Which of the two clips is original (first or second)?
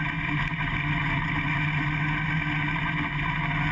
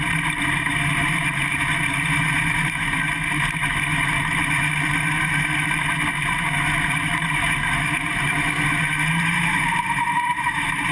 first